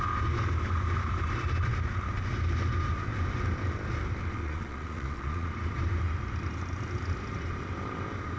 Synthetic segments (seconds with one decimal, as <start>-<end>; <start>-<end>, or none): 4.4-5.5